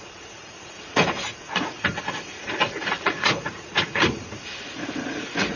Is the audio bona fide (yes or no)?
no